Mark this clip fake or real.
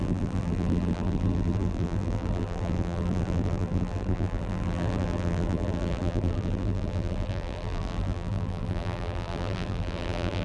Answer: fake